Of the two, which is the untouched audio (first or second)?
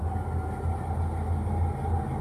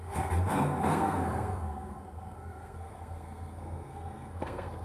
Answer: first